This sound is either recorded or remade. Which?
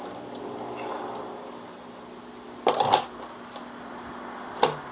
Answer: recorded